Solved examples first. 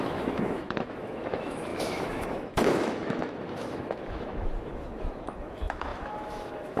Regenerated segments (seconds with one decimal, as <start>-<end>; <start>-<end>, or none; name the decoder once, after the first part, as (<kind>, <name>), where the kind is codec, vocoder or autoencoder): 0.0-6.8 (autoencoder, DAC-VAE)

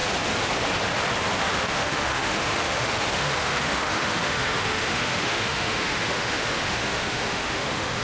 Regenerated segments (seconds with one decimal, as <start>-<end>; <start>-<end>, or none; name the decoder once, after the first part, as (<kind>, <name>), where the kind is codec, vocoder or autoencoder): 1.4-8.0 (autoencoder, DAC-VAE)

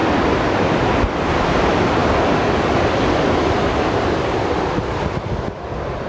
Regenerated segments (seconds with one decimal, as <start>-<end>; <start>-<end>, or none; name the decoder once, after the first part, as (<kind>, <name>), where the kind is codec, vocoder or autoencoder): none

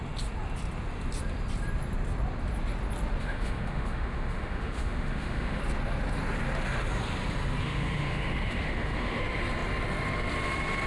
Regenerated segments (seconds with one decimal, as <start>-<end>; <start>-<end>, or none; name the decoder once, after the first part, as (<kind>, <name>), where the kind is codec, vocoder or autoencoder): 3.2-5.6 (autoencoder, DAC-VAE); 7.6-9.2

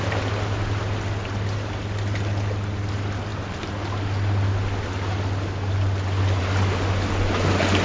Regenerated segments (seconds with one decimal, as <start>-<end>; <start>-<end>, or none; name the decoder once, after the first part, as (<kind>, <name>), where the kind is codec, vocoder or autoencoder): none